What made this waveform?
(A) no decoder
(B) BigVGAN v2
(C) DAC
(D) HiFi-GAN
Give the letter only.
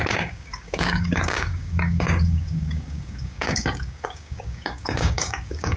C